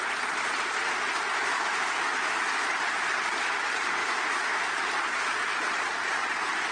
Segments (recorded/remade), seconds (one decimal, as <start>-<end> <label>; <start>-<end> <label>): 0.0-1.3 recorded; 1.3-2.6 remade; 2.6-4.0 recorded; 4.0-4.8 remade; 4.8-6.7 recorded